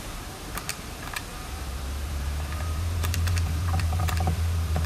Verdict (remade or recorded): remade